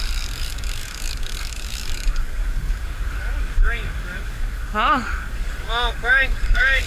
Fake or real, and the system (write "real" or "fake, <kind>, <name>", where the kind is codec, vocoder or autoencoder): fake, codec, DAC